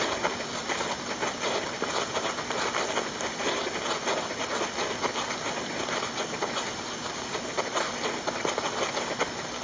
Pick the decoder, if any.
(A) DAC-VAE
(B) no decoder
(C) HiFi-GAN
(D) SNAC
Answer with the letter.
B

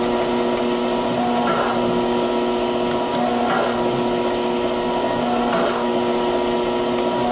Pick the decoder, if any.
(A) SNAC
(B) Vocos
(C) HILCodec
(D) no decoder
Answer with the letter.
D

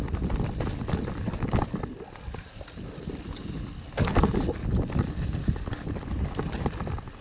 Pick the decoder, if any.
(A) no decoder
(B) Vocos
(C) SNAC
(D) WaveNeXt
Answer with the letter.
A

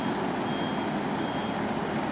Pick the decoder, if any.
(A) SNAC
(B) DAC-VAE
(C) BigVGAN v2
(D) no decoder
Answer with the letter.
D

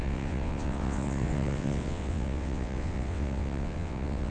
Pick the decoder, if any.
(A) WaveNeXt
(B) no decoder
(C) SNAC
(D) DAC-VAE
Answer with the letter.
A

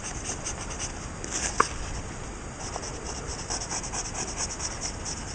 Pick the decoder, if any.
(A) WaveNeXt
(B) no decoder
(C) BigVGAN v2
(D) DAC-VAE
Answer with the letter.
B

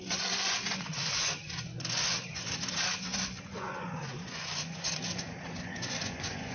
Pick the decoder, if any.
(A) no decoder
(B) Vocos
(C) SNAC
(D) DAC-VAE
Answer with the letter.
B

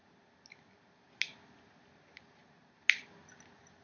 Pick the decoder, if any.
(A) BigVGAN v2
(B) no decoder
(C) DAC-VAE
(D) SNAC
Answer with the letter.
B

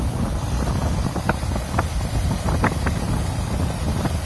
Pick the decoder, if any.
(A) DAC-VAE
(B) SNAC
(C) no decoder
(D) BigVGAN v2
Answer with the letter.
C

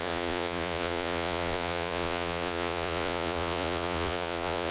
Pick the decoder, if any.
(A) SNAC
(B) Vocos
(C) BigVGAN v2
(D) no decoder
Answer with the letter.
B